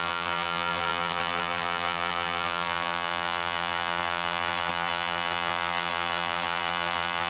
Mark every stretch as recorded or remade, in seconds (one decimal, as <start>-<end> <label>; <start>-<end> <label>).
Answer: 0.0-7.3 remade